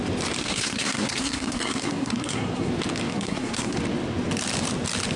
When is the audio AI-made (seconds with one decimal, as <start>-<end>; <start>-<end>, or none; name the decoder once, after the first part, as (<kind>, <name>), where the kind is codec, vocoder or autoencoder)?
0.4-2.7 (codec, SNAC); 3.1-3.8